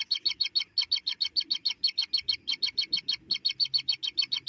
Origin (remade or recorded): recorded